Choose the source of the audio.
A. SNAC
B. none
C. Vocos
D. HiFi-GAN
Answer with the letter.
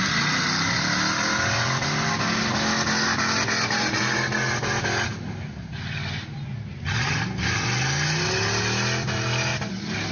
B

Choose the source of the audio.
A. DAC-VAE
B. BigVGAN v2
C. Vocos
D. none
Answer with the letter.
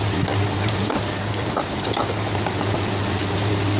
D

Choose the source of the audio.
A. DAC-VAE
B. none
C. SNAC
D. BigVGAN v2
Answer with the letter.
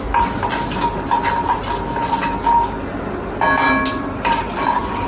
B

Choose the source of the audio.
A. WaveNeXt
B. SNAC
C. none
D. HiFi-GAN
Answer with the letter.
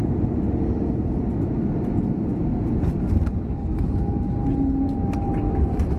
C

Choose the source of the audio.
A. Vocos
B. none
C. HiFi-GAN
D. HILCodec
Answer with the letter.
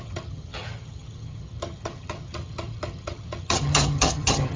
C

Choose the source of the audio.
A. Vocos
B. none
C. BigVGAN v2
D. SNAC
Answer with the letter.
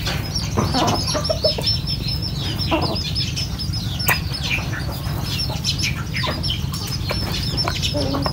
B